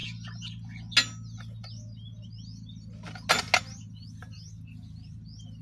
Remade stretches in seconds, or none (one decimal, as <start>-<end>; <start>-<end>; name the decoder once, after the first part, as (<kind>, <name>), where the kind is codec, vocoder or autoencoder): none